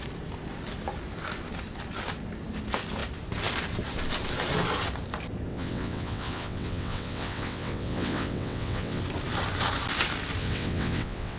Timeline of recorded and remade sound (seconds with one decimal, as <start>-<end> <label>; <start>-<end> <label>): 0.0-5.5 recorded; 5.5-9.0 remade; 9.0-10.4 recorded; 10.4-11.4 remade